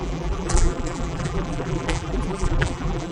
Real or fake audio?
fake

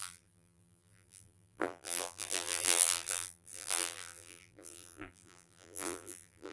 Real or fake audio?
fake